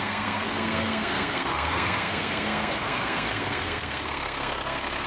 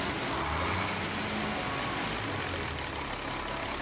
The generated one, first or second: first